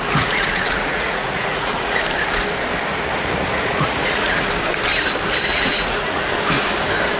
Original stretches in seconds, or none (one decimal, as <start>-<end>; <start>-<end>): 2.0-2.9; 4.5-5.5; 6.2-7.2